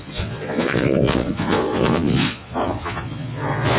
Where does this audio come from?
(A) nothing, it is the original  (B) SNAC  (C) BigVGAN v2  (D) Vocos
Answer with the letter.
D